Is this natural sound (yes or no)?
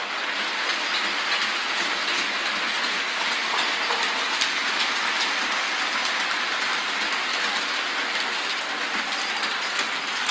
yes